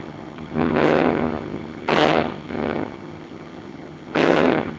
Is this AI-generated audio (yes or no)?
yes